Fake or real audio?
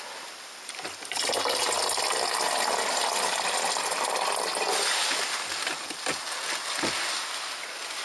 real